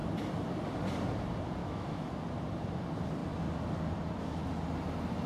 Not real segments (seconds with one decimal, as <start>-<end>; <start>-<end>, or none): 1.6-2.1